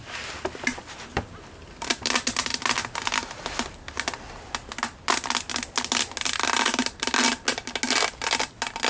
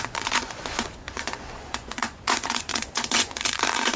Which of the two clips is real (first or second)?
first